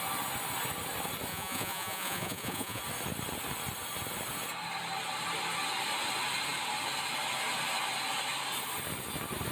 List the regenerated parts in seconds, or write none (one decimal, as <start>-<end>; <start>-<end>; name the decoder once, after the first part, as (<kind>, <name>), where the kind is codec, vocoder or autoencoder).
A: 1.3-2.8 (vocoder, Vocos)